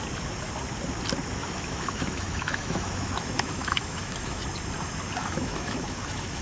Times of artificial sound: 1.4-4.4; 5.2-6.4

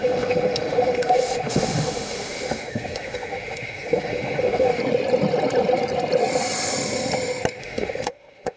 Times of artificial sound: 0.0-4.8; 7.6-8.6

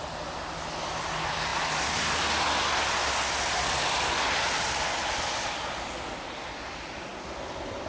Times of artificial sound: none

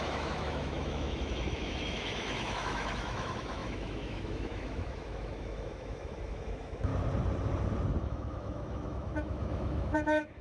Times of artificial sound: 0.0-6.9; 8.0-10.4

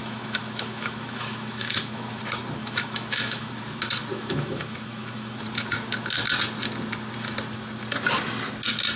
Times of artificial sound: 0.0-2.2; 2.6-3.6; 4.1-5.4

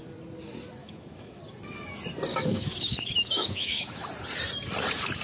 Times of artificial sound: 0.8-1.4; 2.3-4.1